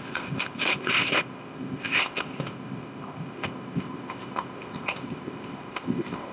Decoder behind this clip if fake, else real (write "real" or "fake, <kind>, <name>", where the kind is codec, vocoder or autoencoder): fake, codec, ZipCodec